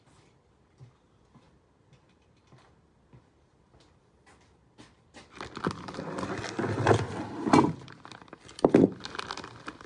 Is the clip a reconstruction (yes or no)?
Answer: no